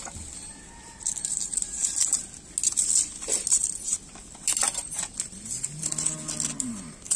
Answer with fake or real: real